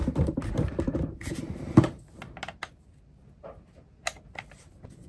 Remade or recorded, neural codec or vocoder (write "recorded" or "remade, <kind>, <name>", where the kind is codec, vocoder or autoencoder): recorded